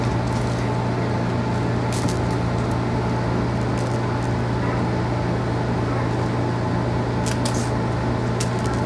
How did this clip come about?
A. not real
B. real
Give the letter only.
B